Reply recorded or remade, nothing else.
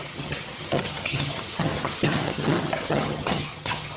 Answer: remade